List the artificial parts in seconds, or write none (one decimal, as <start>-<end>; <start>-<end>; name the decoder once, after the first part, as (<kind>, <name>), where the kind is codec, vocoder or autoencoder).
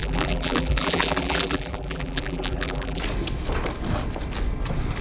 0.0-3.0 (vocoder, BigVGAN v2)